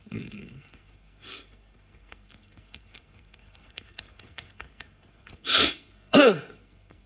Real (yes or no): no